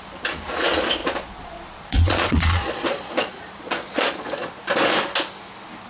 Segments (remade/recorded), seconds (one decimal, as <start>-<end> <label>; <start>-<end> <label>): 0.0-1.0 recorded; 1.0-4.5 remade; 4.5-5.9 recorded